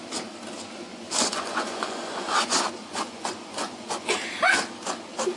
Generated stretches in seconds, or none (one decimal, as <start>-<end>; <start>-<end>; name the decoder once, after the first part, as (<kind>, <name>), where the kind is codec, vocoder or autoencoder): 0.9-4.1 (vocoder, Vocos)